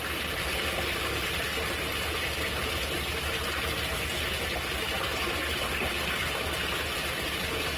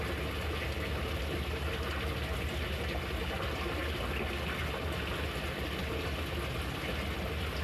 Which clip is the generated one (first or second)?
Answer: first